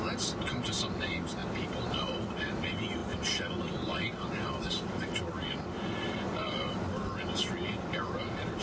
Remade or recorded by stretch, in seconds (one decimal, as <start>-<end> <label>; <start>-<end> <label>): 0.0-8.6 recorded